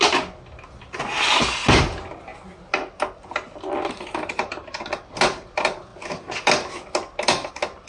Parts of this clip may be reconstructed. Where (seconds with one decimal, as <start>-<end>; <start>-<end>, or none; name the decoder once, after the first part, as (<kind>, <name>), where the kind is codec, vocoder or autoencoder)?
none